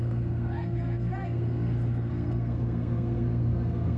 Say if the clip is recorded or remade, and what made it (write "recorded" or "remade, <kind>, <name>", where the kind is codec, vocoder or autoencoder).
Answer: remade, codec, SNAC